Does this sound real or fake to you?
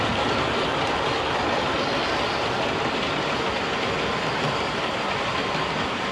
real